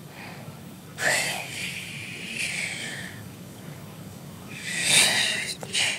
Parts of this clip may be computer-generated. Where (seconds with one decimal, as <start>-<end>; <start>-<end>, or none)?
0.0-1.9; 2.8-4.9